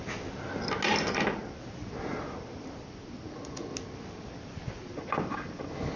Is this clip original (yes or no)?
yes